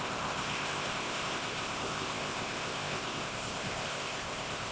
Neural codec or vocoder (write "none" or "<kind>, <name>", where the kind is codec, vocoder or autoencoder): codec, ZipCodec